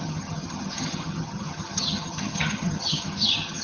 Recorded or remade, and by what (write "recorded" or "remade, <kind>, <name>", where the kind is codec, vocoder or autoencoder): remade, vocoder, HiFi-GAN